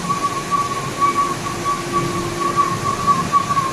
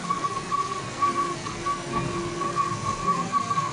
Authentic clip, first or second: first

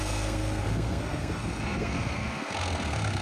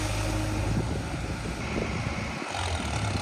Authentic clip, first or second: second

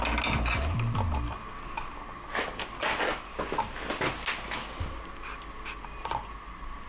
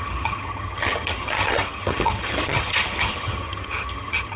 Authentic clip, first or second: first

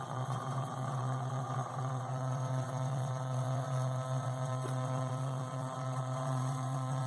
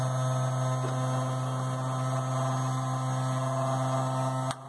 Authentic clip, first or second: second